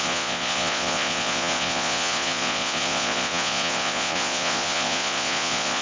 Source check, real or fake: fake